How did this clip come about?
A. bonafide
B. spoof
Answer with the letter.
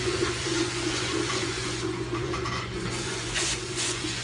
B